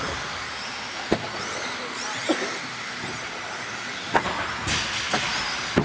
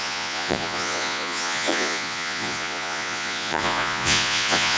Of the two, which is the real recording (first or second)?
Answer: first